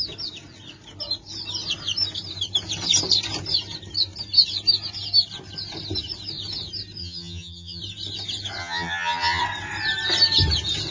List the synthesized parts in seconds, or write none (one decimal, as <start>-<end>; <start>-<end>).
7.0-7.8; 8.6-9.4